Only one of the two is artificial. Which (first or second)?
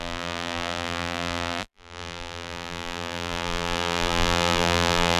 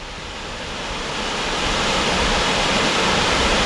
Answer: first